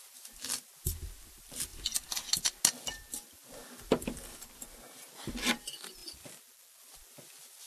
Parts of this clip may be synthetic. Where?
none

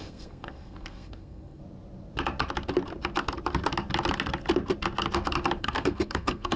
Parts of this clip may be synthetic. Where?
0.0-1.6 (codec, SNAC); 5.6-6.6

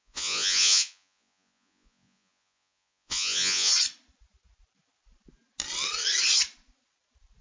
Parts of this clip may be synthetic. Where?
0.0-3.7 (vocoder, Vocos)

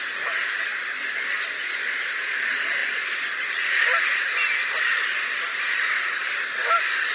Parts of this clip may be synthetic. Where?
none

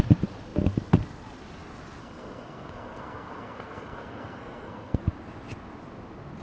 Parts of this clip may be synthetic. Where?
2.0-5.0 (codec, SNAC)

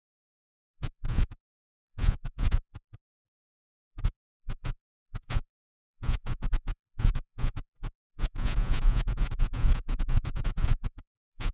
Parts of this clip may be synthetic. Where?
0.0-11.5 (vocoder, Vocos)